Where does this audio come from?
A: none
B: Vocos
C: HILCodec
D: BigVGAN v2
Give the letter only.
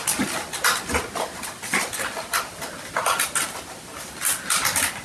A